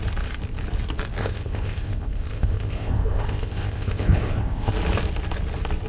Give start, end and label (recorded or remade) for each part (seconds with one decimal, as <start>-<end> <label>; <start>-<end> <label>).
0.0-1.2 recorded; 1.2-4.7 remade; 4.7-5.9 recorded